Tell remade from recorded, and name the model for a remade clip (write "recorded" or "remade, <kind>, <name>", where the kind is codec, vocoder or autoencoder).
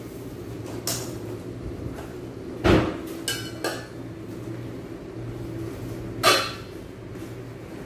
recorded